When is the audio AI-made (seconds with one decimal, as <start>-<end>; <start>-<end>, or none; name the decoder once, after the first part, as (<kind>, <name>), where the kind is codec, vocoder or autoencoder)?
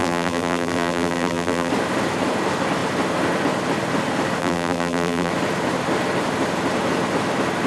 0.0-1.7 (vocoder, BigVGAN v2); 4.4-5.3